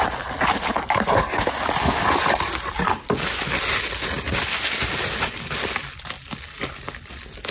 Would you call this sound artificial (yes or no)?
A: no